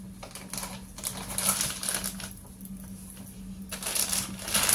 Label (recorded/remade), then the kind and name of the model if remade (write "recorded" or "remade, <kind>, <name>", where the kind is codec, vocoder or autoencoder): recorded